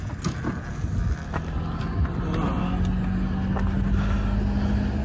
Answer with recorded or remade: recorded